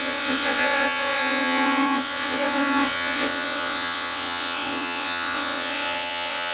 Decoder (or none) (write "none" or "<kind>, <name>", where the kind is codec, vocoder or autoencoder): vocoder, WaveNeXt